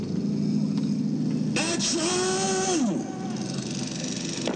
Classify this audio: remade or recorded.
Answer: recorded